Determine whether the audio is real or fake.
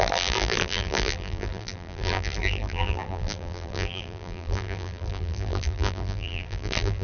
fake